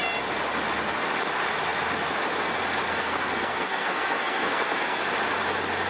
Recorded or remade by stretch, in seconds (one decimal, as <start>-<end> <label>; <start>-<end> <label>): 0.0-2.9 recorded; 2.9-5.0 remade; 5.0-5.9 recorded